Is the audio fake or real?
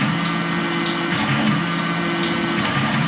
real